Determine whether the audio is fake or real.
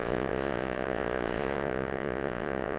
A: fake